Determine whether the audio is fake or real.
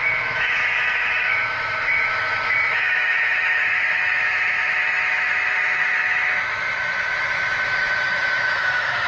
fake